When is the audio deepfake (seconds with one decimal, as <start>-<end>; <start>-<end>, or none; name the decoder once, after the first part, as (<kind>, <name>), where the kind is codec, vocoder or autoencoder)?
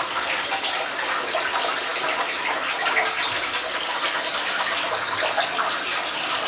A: none